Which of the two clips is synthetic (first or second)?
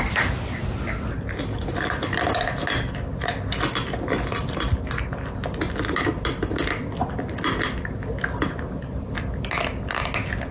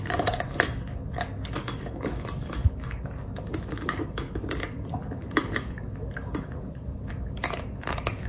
second